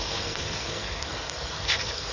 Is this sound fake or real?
fake